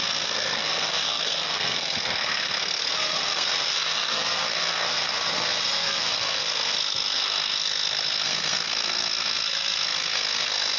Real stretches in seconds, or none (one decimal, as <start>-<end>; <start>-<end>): none